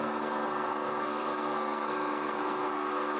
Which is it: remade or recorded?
remade